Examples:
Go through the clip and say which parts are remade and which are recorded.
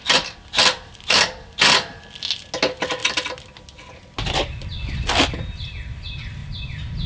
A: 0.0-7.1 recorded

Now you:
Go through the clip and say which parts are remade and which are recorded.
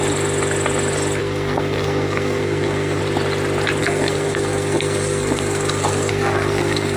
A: 0.0-1.2 recorded; 1.2-3.0 remade; 3.0-3.8 recorded; 3.8-7.0 remade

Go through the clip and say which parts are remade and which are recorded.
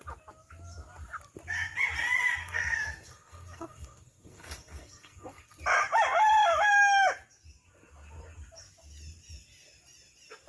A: 0.0-2.4 recorded; 2.4-5.5 remade; 5.5-10.5 recorded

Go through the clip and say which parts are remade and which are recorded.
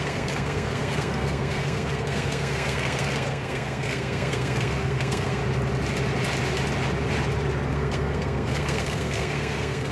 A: 0.0-5.4 remade; 5.4-7.7 recorded; 7.7-9.9 remade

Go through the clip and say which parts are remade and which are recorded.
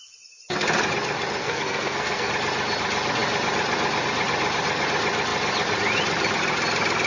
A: 0.0-1.4 recorded; 1.4-2.3 remade; 2.3-7.1 recorded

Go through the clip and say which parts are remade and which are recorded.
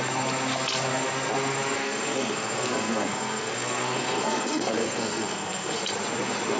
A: 0.0-1.8 recorded; 1.8-5.8 remade; 5.8-6.6 recorded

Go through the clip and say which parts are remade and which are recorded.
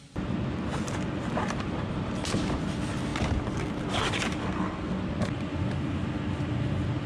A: 0.0-4.4 recorded; 4.4-4.9 remade; 4.9-7.1 recorded